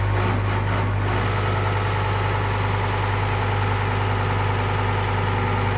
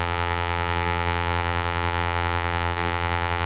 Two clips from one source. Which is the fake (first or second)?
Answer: second